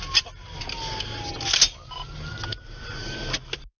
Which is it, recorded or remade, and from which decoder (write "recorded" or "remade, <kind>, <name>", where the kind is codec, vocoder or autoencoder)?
recorded